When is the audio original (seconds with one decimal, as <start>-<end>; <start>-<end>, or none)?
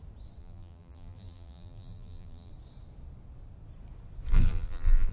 0.0-0.4; 2.5-4.3